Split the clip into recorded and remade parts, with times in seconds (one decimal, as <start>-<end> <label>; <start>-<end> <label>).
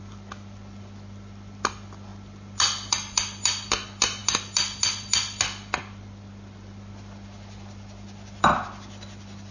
0.0-9.5 recorded